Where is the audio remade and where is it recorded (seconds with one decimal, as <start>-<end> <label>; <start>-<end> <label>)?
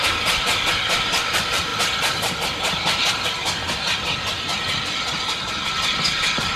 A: 0.0-1.7 remade; 1.7-5.7 recorded; 5.7-6.6 remade